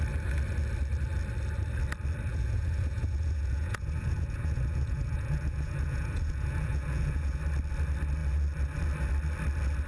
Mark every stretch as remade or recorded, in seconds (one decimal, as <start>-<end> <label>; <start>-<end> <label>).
0.0-2.3 recorded; 2.3-7.4 remade; 7.4-9.9 recorded